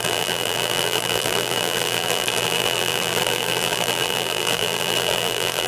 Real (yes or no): no